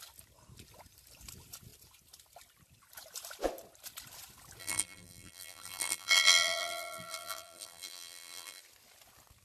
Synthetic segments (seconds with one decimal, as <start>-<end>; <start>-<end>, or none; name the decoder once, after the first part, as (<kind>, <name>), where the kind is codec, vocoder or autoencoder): 4.6-8.6 (vocoder, BigVGAN v2)